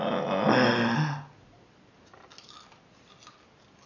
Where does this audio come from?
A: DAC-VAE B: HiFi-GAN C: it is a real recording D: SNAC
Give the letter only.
C